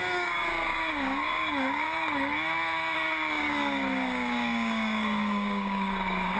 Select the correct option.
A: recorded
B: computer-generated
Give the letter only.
B